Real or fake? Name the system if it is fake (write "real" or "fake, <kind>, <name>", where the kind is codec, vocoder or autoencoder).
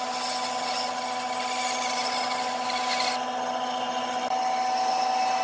real